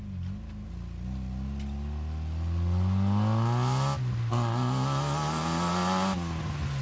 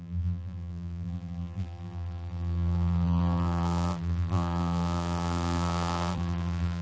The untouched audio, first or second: first